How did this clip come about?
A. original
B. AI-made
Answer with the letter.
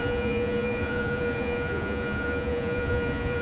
B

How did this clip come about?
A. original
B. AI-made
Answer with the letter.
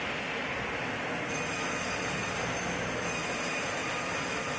A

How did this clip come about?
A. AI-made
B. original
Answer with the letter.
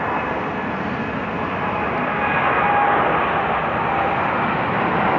B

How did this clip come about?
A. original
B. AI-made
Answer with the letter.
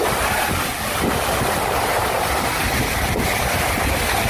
A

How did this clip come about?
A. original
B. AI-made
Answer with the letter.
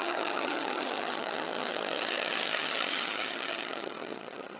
B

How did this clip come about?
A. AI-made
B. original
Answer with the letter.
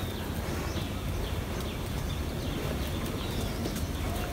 B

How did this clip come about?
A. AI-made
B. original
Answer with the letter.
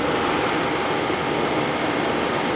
B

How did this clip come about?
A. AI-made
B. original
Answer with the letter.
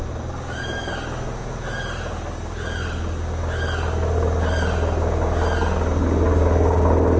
B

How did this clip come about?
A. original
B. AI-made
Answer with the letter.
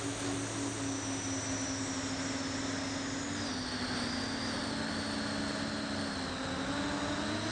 A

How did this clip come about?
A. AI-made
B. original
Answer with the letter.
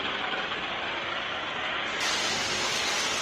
B